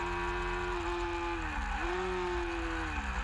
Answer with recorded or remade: recorded